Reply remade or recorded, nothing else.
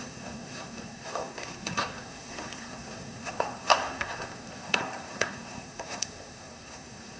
remade